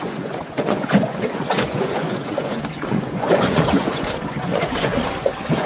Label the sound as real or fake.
fake